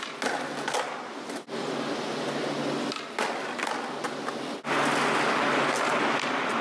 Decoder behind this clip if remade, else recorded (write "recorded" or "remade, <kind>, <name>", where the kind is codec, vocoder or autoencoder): recorded